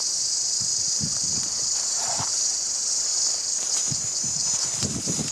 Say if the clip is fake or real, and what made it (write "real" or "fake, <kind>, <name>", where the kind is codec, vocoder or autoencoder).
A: fake, vocoder, BigVGAN v2